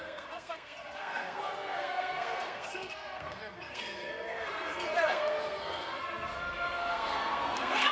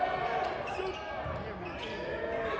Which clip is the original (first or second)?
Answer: second